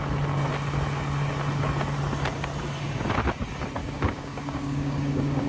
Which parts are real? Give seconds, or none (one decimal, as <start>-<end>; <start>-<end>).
0.0-3.8